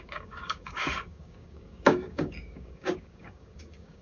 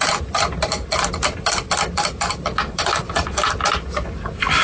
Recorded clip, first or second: second